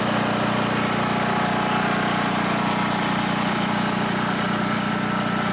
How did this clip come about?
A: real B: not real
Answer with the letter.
A